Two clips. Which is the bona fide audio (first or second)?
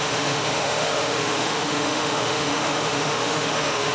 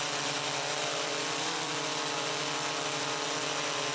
second